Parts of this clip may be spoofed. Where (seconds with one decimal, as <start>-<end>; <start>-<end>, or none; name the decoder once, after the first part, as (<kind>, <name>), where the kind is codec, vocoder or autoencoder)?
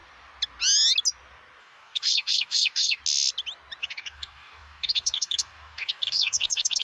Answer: 1.6-3.0 (codec, DAC); 3.8-6.8